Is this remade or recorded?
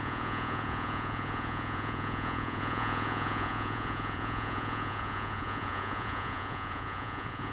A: remade